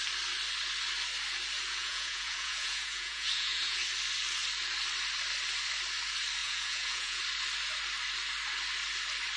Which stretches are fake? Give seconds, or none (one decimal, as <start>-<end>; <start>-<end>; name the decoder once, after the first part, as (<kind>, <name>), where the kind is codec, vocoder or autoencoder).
1.8-3.8 (vocoder, Vocos); 6.4-7.2

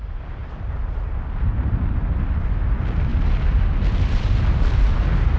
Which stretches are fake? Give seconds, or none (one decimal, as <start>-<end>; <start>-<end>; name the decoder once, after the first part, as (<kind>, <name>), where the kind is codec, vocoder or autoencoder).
none

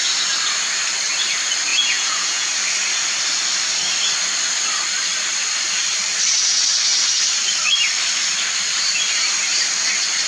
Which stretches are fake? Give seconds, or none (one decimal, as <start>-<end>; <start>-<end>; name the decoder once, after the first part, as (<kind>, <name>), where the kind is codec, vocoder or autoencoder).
1.7-2.5 (vocoder, Vocos)

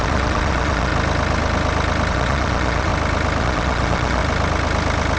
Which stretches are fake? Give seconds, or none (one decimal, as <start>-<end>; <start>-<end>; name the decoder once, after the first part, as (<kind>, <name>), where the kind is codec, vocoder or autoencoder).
0.0-0.9 (vocoder, Vocos); 2.1-2.9; 3.4-4.2

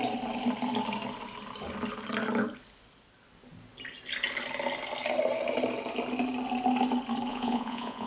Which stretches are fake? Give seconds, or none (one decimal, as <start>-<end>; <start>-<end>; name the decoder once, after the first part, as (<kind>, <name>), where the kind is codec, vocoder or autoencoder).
7.3-8.1 (vocoder, Vocos)